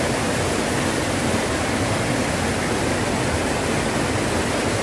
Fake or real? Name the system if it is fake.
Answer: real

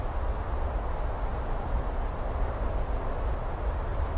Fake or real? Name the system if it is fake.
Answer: real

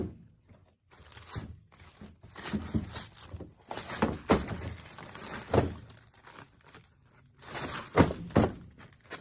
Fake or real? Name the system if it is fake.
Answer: real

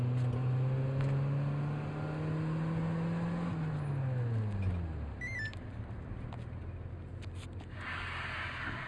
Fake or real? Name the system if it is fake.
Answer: real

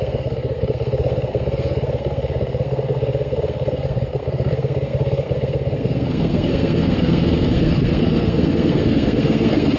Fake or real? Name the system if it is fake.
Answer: fake, codec, SNAC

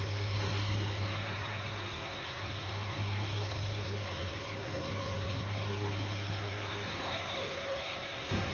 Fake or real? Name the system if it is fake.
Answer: fake, codec, SNAC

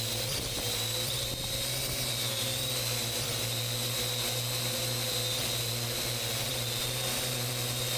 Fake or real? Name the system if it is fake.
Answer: real